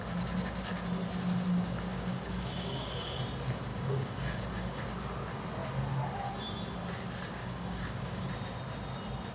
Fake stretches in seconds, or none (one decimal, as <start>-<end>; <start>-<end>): 1.9-3.2; 3.7-4.8; 7.4-8.3